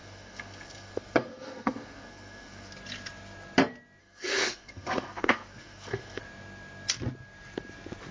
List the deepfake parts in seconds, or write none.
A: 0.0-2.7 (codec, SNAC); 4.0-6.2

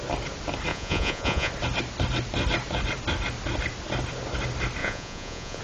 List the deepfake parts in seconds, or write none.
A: 0.7-1.5 (vocoder, Vocos); 4.8-5.6

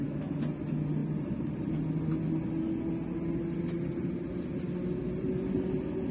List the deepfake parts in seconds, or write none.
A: 1.0-1.7 (vocoder, BigVGAN v2)

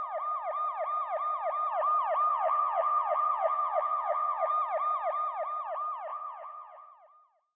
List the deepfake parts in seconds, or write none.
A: 2.3-4.5 (vocoder, Vocos); 6.1-6.9

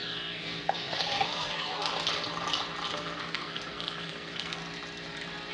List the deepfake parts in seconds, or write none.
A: 0.0-1.9 (codec, SNAC); 2.9-4.6